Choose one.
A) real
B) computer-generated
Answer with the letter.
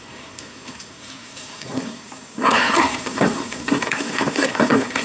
B